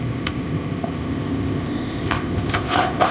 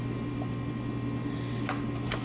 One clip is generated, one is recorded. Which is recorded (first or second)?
second